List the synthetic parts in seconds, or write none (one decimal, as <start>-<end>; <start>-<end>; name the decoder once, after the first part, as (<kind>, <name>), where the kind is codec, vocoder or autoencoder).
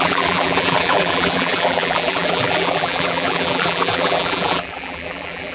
0.0-5.5 (vocoder, BigVGAN v2)